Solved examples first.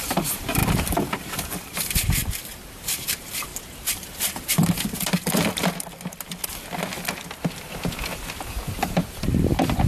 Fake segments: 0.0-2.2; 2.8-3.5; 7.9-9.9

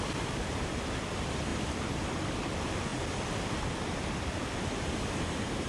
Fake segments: 1.5-2.3

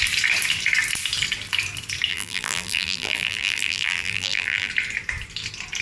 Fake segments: 2.1-4.7

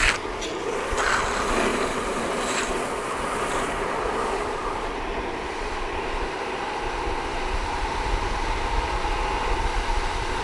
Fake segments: 1.7-6.6; 7.3-8.7